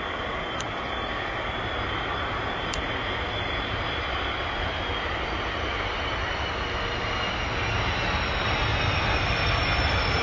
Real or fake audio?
real